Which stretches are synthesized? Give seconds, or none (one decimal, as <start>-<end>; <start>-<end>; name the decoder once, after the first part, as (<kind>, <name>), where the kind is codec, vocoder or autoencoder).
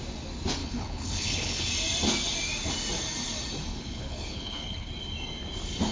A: 0.6-1.7 (codec, HILCodec); 3.7-4.9